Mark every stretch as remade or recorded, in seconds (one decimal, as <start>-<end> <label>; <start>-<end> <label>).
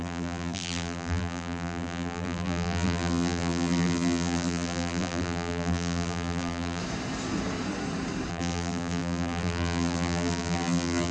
0.0-6.8 remade; 6.8-8.3 recorded; 8.3-11.1 remade